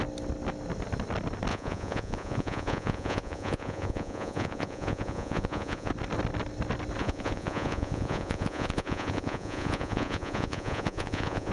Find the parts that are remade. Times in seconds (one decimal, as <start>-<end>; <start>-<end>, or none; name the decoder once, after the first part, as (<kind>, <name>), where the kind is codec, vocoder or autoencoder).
1.5-5.9 (vocoder, Vocos); 7.0-11.5